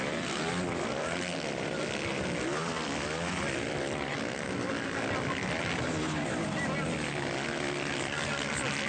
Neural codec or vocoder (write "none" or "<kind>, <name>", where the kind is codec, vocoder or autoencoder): none